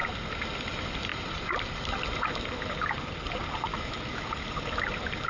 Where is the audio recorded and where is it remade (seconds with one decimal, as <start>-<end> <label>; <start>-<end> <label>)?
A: 0.0-3.7 recorded; 3.7-4.3 remade; 4.3-5.3 recorded